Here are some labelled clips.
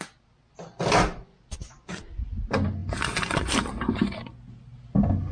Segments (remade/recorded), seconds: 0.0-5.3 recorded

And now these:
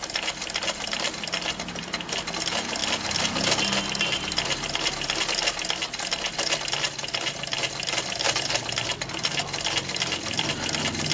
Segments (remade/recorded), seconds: 0.0-11.1 recorded